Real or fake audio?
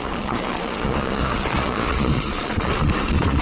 fake